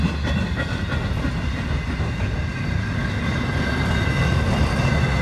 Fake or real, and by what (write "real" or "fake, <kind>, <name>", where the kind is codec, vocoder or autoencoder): real